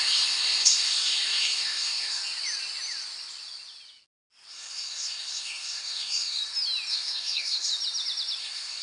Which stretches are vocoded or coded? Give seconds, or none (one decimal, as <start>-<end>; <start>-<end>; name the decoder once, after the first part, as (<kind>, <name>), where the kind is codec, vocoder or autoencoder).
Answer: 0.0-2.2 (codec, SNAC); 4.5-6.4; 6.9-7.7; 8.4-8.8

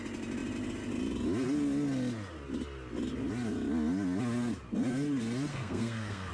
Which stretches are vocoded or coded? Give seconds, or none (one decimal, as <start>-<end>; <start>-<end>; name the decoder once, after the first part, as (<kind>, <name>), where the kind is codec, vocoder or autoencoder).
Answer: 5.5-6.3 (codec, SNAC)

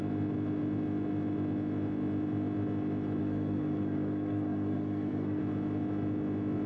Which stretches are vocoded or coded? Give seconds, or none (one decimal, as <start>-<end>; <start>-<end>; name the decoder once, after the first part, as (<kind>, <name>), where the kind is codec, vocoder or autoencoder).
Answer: 3.2-5.4 (codec, SNAC)

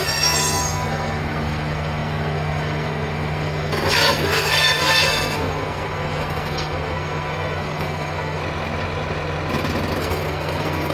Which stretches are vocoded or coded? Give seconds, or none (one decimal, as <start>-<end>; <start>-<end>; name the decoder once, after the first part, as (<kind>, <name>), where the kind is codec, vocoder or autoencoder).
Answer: 0.0-8.4 (codec, SNAC); 10.0-10.9

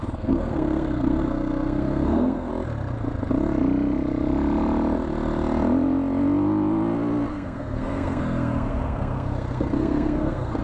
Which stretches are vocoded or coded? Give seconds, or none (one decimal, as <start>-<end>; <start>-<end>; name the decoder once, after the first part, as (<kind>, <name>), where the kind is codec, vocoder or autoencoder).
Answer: 0.0-2.5 (codec, SNAC); 7.3-10.6

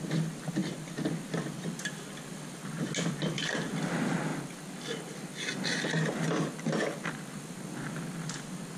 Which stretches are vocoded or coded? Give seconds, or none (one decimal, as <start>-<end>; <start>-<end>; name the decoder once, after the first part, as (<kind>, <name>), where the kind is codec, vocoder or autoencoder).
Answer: none

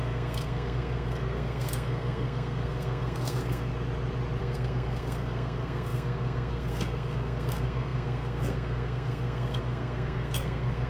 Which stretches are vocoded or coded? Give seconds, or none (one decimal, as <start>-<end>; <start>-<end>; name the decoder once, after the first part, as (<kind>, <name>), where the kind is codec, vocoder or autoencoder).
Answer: 0.0-3.7 (codec, SNAC); 4.4-10.9